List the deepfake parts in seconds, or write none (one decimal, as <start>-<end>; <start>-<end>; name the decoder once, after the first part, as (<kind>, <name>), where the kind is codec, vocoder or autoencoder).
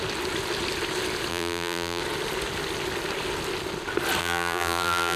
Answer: 1.3-2.0 (vocoder, BigVGAN v2); 4.2-5.2